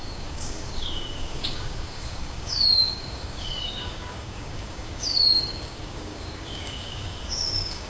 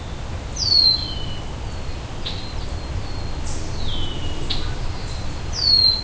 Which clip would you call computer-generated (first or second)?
first